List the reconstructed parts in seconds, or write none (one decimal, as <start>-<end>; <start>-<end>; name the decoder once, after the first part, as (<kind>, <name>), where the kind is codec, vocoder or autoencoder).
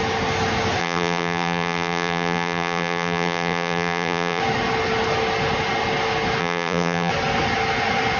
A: 0.8-4.4 (vocoder, BigVGAN v2); 6.4-7.1